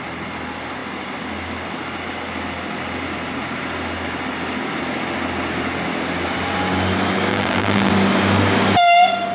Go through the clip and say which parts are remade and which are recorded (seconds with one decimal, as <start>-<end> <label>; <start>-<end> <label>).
0.0-7.3 recorded; 7.3-7.9 remade; 7.9-9.3 recorded